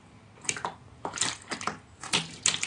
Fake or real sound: real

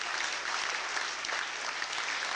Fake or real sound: real